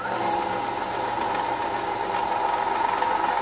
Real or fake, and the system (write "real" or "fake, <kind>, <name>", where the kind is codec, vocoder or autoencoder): real